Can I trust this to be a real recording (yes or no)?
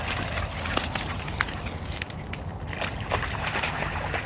yes